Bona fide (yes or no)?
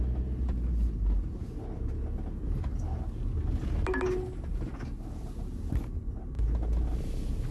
yes